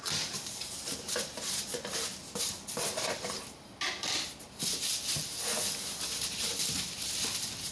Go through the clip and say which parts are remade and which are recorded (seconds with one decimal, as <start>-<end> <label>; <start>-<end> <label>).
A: 0.0-7.7 recorded